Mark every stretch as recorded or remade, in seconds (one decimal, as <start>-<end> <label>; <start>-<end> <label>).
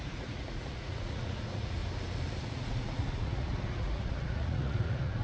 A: 0.0-1.8 remade; 1.8-2.4 recorded; 2.4-5.2 remade